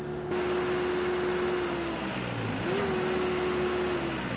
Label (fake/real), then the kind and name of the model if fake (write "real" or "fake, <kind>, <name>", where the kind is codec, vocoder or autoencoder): real